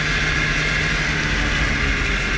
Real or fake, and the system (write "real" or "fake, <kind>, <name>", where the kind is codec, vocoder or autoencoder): real